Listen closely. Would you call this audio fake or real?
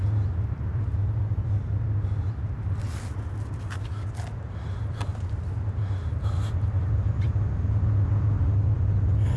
real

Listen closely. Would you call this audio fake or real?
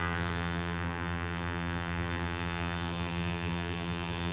fake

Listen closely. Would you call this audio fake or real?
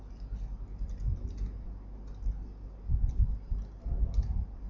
real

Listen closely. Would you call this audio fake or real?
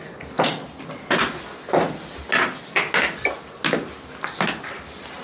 real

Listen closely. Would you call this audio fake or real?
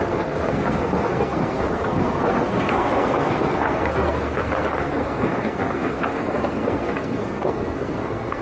fake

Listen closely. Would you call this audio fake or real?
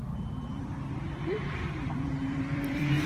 fake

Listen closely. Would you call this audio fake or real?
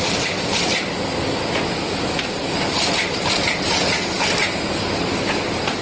fake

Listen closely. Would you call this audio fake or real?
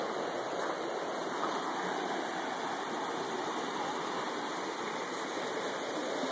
real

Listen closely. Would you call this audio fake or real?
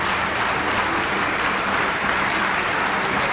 real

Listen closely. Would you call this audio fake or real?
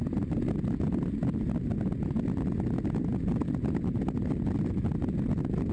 real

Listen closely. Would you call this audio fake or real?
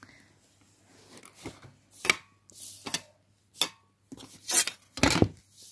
real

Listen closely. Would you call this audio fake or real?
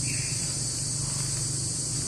real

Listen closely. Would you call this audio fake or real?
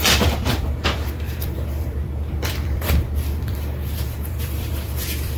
fake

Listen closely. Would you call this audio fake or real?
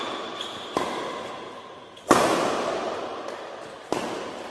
real